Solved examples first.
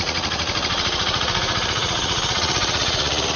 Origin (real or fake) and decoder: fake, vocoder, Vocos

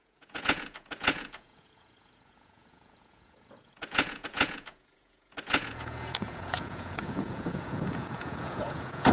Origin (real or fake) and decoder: fake, vocoder, Vocos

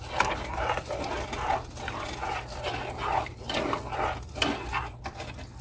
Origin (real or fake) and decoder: real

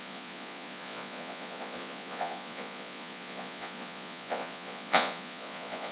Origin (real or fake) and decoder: fake, vocoder, Vocos